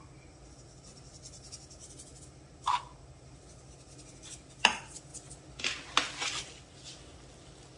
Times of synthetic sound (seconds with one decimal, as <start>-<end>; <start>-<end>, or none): none